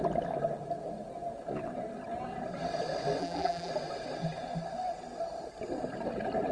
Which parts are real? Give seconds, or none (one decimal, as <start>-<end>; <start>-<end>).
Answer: 0.0-3.2; 3.7-6.5